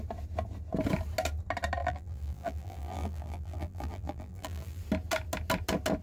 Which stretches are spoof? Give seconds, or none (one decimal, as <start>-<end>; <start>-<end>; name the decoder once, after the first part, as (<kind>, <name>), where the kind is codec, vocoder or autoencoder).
1.8-4.8 (vocoder, BigVGAN v2)